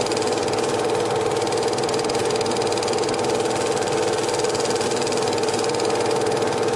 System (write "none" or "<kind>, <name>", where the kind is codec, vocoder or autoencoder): none